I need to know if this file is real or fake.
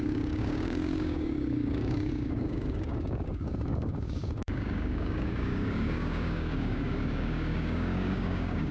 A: fake